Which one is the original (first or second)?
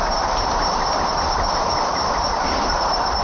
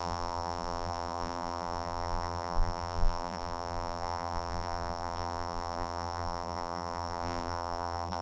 first